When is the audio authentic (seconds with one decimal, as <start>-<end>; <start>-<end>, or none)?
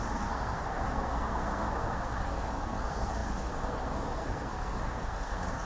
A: none